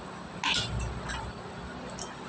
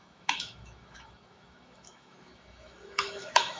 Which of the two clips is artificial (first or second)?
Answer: second